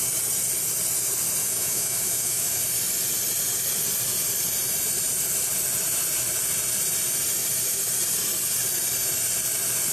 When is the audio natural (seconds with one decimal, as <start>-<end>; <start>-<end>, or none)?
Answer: 0.0-1.4; 2.6-9.9